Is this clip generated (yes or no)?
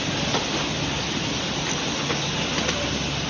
no